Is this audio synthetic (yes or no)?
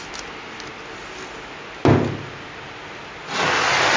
no